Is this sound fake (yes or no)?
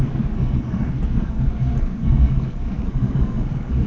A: yes